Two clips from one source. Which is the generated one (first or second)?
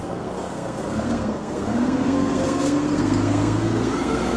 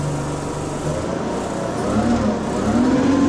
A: first